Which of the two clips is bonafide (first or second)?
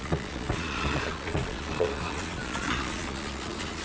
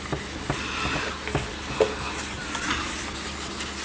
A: second